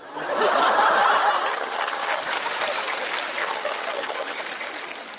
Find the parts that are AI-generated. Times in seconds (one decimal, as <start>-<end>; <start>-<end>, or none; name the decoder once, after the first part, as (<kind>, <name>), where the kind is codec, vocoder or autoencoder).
1.5-2.2 (vocoder, HiFi-GAN); 3.4-4.4